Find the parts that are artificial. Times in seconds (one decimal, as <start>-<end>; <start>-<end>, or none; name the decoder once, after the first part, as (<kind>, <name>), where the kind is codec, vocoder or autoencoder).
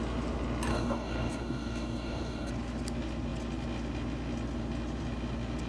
0.7-2.5 (codec, DAC)